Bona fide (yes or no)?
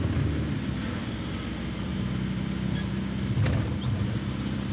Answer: yes